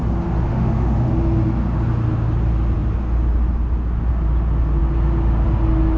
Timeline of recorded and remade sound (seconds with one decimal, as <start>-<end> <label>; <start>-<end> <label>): 0.0-0.5 recorded; 0.5-1.1 remade; 1.1-6.0 recorded